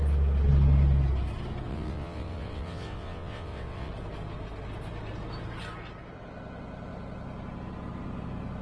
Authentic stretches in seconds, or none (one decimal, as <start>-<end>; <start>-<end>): 0.0-1.7; 3.9-8.6